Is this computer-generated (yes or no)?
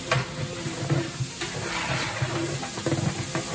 no